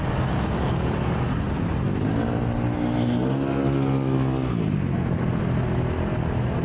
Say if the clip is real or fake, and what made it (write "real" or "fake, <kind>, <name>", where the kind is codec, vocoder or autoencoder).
real